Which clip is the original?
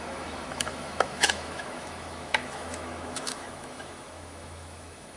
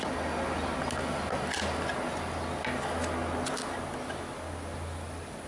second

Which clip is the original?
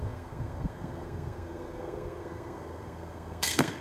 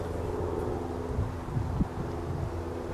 second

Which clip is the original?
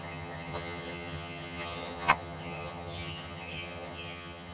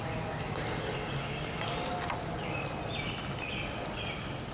second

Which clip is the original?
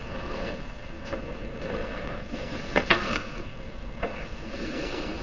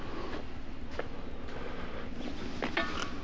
second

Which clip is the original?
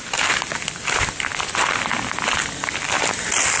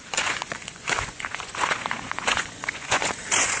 first